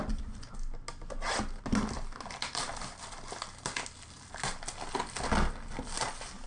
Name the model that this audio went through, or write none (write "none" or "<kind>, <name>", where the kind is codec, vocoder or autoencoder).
none